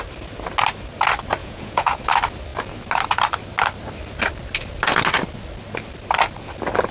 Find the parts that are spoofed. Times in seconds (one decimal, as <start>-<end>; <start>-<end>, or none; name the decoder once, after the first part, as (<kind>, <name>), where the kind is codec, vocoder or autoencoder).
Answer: 1.4-2.0 (vocoder, Vocos)